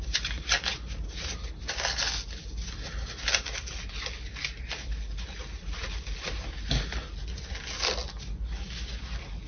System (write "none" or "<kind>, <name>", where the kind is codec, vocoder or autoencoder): none